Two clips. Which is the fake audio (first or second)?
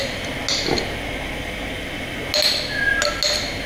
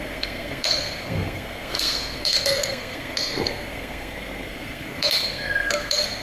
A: second